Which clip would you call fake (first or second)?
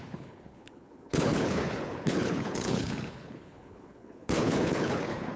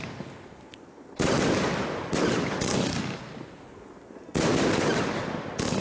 first